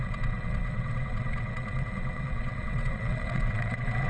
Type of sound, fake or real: fake